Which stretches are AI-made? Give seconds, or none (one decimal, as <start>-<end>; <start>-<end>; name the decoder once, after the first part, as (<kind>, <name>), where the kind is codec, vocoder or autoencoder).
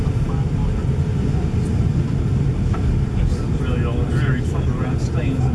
none